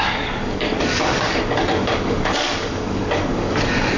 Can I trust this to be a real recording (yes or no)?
no